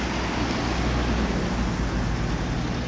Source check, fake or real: real